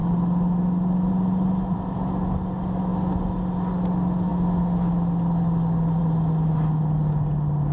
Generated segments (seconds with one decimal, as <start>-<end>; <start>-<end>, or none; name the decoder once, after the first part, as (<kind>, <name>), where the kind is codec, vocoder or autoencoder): none